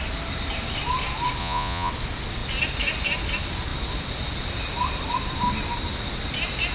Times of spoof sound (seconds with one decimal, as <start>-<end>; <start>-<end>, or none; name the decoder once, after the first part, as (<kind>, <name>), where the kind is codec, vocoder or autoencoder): 1.4-1.9 (vocoder, Vocos)